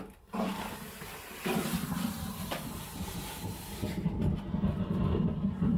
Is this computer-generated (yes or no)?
yes